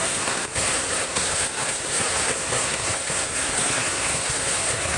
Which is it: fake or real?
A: fake